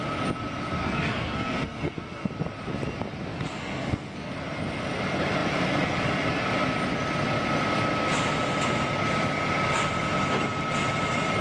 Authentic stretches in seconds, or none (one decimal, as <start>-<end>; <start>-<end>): 0.0-0.8; 2.3-3.3; 4.3-11.4